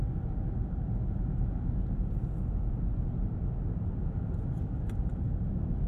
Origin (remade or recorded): recorded